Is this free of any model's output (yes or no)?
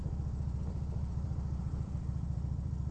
no